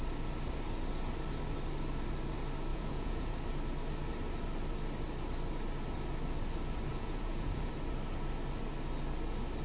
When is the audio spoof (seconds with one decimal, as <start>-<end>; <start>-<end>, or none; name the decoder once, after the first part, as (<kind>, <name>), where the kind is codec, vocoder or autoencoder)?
2.7-3.3 (vocoder, Vocos); 6.9-7.7